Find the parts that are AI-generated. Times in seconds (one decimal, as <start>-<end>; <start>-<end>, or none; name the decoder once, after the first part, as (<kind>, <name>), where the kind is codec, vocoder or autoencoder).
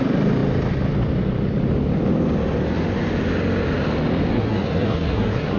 4.3-5.6 (codec, SNAC)